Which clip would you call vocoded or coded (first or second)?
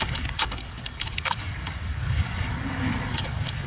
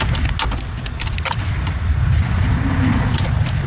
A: first